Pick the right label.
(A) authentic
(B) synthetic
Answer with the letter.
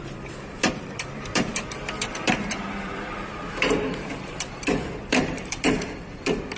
B